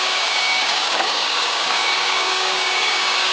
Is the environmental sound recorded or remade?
remade